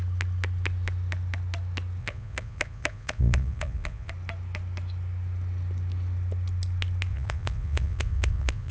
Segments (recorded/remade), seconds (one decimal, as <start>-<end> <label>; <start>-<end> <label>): 0.0-2.0 recorded; 2.0-4.1 remade; 4.1-7.1 recorded; 7.1-8.7 remade